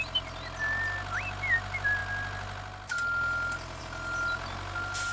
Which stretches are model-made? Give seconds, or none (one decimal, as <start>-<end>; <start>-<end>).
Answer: none